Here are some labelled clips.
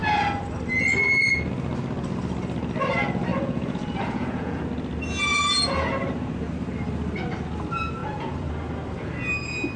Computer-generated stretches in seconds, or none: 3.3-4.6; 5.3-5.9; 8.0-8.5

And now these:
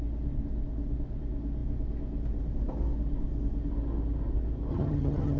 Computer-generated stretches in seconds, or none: 4.7-5.4

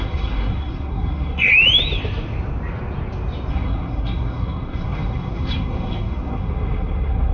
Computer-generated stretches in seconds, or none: 0.0-1.5; 3.5-7.3